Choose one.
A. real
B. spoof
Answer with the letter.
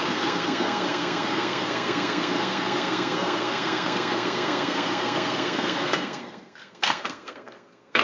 B